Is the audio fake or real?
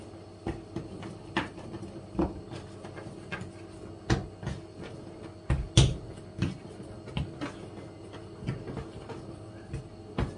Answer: real